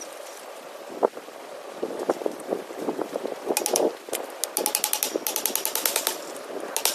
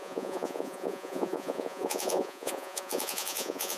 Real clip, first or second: first